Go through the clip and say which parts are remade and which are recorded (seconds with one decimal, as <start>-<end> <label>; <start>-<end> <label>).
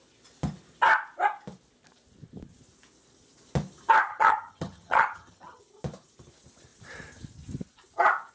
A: 0.0-4.1 recorded; 4.1-5.6 remade; 5.6-8.3 recorded